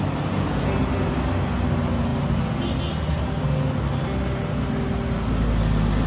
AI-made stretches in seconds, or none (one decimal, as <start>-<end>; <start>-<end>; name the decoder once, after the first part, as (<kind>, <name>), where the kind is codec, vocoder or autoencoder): none